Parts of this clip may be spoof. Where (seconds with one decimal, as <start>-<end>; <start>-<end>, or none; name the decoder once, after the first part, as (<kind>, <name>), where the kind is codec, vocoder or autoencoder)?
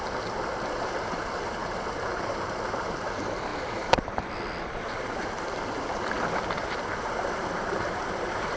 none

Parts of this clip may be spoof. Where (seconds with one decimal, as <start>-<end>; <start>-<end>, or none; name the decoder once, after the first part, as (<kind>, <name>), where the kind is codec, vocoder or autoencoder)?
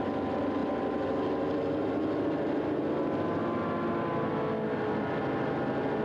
none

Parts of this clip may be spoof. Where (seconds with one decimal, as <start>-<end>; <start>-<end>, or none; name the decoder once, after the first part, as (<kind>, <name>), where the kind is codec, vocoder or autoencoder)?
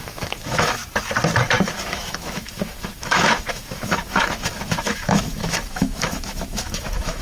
0.0-0.8 (autoencoder, DAC-VAE); 1.7-7.2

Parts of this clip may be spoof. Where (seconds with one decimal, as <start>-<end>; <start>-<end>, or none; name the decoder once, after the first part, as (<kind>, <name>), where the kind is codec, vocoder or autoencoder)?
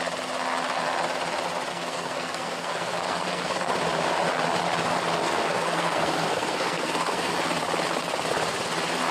1.7-3.7 (codec, SNAC); 5.2-7.3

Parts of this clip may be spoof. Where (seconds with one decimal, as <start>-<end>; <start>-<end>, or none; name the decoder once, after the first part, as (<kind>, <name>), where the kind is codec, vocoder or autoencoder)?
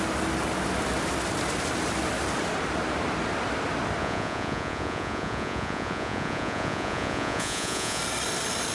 4.0-8.0 (vocoder, Vocos)